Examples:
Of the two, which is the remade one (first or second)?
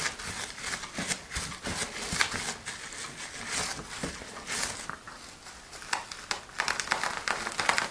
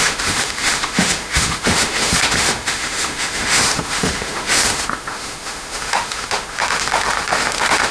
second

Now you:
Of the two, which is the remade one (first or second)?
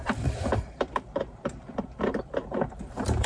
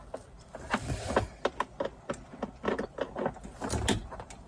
first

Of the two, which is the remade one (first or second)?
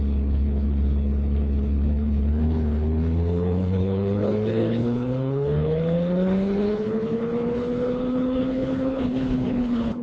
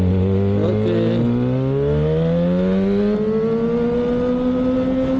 first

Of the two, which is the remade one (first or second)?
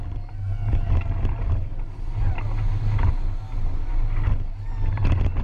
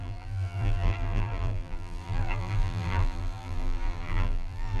second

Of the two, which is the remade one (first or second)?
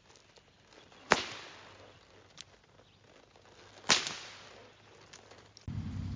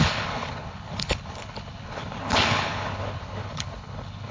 second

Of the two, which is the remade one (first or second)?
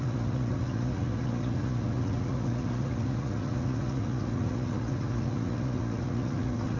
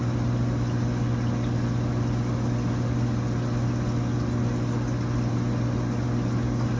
first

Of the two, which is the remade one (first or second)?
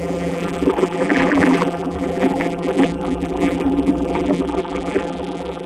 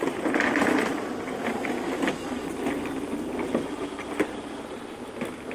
first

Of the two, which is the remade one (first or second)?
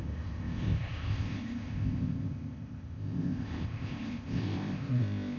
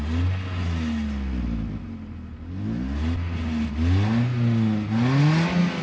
first